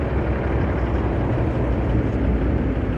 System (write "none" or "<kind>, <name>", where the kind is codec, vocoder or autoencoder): none